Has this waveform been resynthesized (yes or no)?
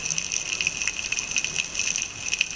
no